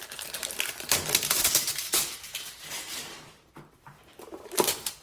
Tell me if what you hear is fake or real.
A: fake